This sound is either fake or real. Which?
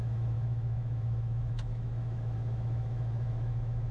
fake